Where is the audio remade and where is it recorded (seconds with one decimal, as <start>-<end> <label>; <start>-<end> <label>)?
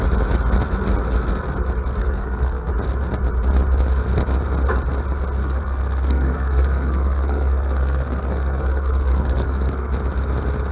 0.0-2.0 recorded; 2.0-2.7 remade; 2.7-5.4 recorded; 5.4-9.9 remade; 9.9-10.7 recorded